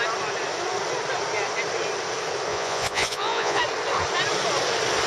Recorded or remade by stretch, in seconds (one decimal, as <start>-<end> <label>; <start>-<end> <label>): 0.0-2.5 recorded; 2.5-3.6 remade; 3.6-5.1 recorded